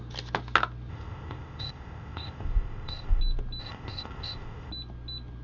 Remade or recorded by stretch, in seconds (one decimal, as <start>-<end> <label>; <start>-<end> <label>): 0.0-0.9 recorded; 0.9-3.2 remade; 3.2-3.6 recorded; 3.6-4.7 remade; 4.7-5.4 recorded